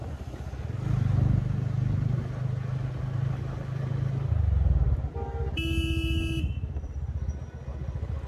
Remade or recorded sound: recorded